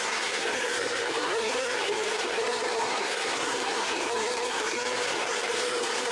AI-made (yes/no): yes